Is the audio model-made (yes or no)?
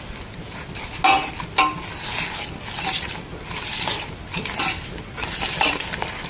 no